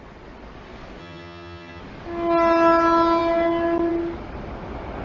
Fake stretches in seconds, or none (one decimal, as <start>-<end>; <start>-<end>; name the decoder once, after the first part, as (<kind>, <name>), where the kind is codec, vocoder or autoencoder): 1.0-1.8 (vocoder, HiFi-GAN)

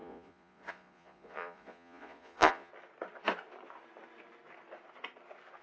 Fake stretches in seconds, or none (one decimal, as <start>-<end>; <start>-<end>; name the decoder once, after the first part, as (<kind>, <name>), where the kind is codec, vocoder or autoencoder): 0.0-2.7 (vocoder, Vocos)

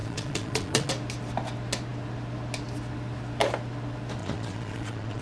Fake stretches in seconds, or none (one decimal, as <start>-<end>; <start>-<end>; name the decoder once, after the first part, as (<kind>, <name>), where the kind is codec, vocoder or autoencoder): 0.0-0.9 (vocoder, Vocos); 4.2-5.2

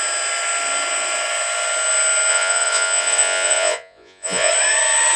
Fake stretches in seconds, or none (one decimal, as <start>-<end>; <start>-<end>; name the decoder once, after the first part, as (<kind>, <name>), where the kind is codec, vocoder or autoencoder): 2.3-4.5 (vocoder, Vocos)